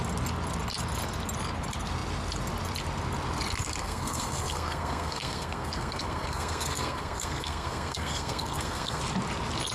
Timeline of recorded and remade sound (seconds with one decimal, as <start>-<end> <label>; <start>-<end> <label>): 0.0-3.8 recorded; 3.8-9.0 remade; 9.0-9.7 recorded